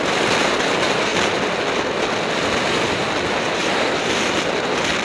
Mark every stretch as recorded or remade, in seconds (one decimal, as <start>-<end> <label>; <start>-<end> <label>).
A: 0.0-5.0 recorded